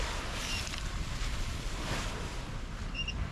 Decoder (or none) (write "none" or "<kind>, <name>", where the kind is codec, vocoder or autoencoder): none